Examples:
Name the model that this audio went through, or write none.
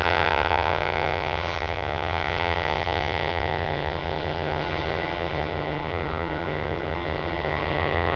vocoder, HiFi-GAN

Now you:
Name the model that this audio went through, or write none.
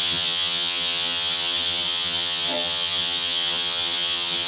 vocoder, HiFi-GAN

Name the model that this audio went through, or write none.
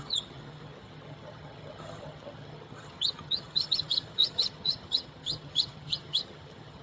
vocoder, HiFi-GAN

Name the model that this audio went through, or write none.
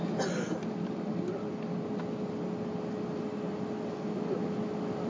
none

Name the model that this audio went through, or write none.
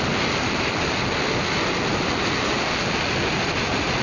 none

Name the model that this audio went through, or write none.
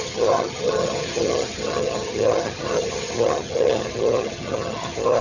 vocoder, HiFi-GAN